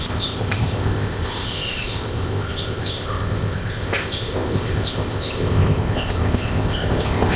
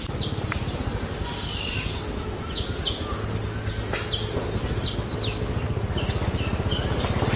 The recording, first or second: second